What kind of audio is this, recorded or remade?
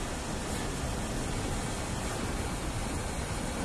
recorded